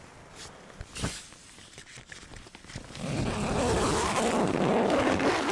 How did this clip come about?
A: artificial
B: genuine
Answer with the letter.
B